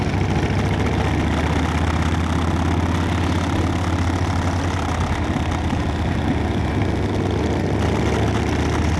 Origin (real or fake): real